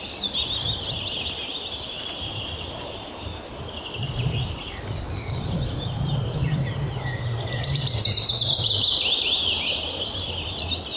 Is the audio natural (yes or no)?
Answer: no